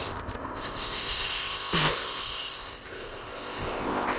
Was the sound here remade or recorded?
remade